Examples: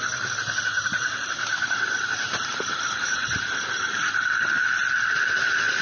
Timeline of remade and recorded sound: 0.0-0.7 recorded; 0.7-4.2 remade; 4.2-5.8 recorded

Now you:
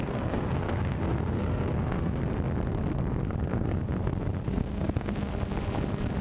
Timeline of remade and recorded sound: 0.0-2.2 remade; 2.2-3.2 recorded; 3.2-3.8 remade; 3.8-4.4 recorded; 4.4-5.3 remade; 5.3-6.2 recorded

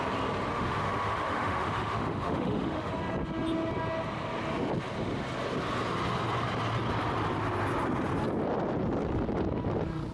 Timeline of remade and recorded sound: 0.0-0.5 recorded; 0.5-2.9 remade; 2.9-10.1 recorded

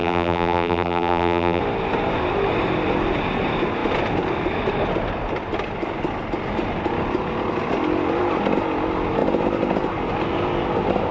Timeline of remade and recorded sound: 0.0-1.6 remade; 1.6-11.1 recorded